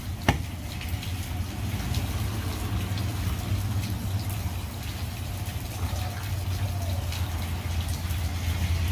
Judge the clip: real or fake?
real